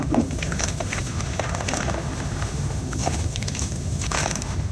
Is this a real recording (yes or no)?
no